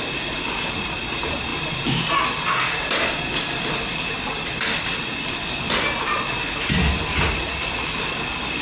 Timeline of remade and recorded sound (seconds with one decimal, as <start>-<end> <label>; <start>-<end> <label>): 0.0-8.6 recorded